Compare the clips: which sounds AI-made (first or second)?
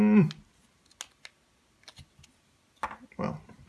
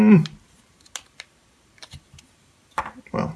second